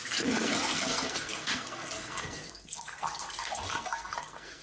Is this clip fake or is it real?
fake